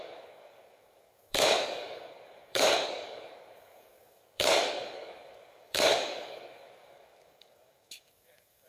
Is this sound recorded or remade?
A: remade